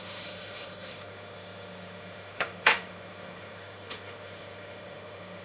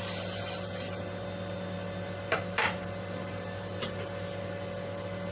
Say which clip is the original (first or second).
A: second